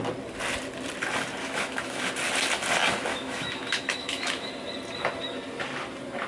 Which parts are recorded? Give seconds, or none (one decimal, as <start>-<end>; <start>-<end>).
0.0-1.4; 2.1-3.1; 4.5-6.3